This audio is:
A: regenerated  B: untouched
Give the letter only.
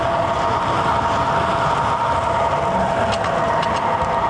B